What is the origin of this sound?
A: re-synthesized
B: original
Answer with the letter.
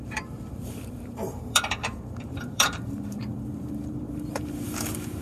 A